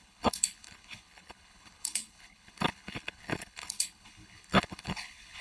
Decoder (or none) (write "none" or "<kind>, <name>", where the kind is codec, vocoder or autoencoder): codec, HILCodec